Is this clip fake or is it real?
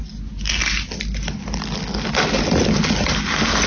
real